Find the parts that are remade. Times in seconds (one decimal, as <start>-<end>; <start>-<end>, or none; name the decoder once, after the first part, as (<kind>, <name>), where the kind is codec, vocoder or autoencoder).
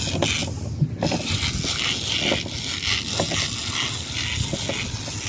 none